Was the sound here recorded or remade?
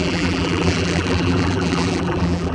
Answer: remade